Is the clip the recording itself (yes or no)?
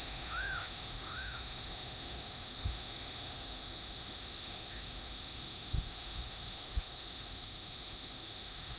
no